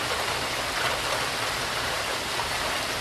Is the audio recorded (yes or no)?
yes